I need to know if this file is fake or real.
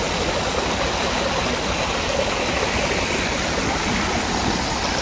real